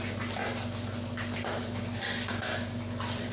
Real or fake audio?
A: real